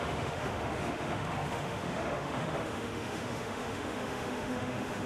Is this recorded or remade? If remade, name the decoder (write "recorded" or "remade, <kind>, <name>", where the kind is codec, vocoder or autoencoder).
remade, autoencoder, DAC-VAE